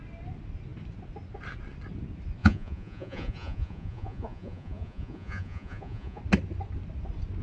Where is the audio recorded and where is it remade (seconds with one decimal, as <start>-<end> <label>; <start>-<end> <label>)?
0.0-2.4 recorded; 2.4-6.2 remade; 6.2-7.4 recorded